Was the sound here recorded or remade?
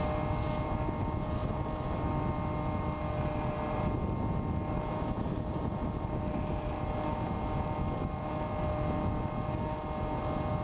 recorded